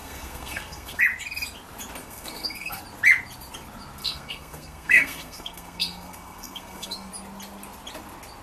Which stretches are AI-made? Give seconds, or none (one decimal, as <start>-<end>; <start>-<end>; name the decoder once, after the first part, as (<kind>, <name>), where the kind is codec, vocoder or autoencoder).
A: 0.0-1.0 (codec, SNAC); 2.0-2.8; 4.0-7.1